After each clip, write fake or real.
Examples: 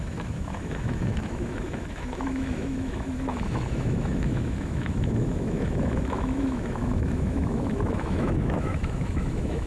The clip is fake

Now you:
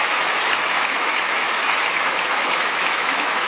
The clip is fake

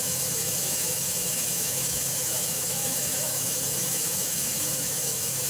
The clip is fake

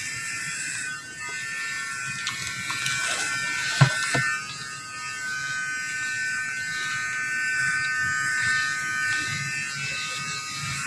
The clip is real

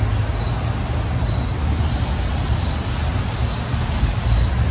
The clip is real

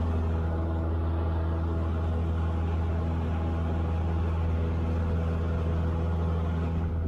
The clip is real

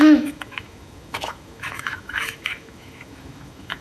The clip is fake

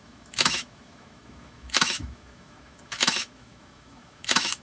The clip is fake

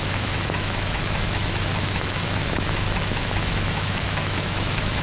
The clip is fake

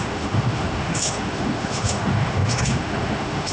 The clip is fake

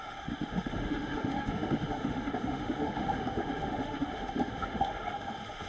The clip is fake